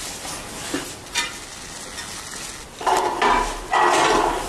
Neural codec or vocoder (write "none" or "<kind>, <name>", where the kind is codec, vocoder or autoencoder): none